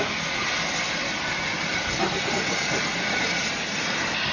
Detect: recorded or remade recorded